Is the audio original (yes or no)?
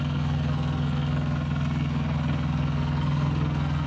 no